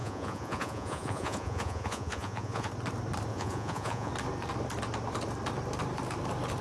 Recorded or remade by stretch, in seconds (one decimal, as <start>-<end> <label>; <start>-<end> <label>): 0.0-2.7 remade; 2.7-3.3 recorded; 3.3-4.1 remade; 4.1-6.6 recorded